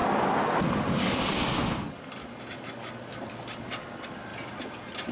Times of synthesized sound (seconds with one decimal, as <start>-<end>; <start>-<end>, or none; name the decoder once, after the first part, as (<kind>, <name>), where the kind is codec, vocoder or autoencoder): none